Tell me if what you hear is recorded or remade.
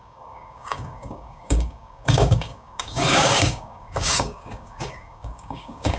remade